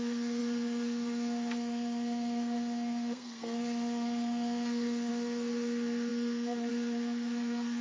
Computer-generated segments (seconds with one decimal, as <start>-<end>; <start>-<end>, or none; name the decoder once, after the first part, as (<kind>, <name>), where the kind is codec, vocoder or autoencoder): 0.0-7.8 (codec, SNAC)